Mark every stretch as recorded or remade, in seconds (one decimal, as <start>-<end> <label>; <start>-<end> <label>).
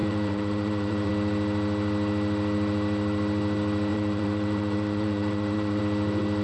0.0-1.1 remade; 1.1-3.9 recorded; 3.9-5.8 remade; 5.8-6.4 recorded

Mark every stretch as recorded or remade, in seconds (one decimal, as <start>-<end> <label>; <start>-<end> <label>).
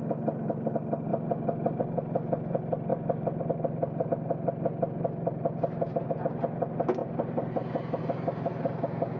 0.0-1.1 recorded; 1.1-1.8 remade; 1.8-2.9 recorded; 2.9-4.1 remade; 4.1-9.2 recorded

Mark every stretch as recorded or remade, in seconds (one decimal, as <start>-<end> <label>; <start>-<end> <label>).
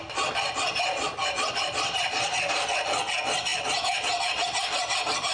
0.0-1.2 recorded; 1.2-2.0 remade; 2.0-5.3 recorded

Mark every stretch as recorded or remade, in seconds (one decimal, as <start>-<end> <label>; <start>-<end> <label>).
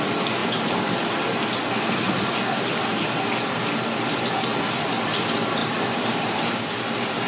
0.0-5.6 recorded; 5.6-6.4 remade; 6.4-7.3 recorded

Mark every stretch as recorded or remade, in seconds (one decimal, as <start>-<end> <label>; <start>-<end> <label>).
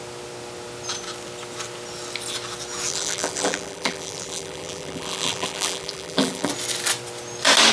0.0-2.9 recorded; 2.9-6.5 remade; 6.5-7.7 recorded